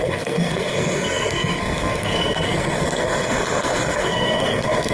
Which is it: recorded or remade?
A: remade